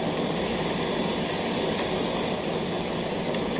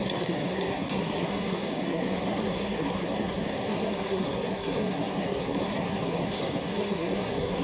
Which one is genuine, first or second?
first